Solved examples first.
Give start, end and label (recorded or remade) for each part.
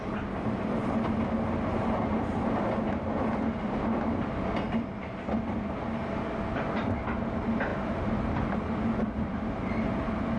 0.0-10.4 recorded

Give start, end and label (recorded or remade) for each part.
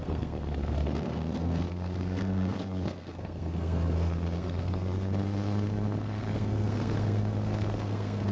0.0-8.3 remade